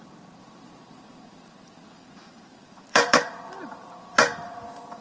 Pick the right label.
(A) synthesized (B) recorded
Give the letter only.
A